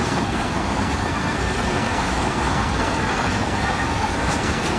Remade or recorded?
remade